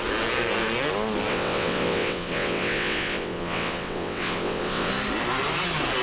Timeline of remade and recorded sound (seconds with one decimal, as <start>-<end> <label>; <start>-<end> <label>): 0.0-1.3 recorded; 1.3-4.9 remade; 4.9-6.0 recorded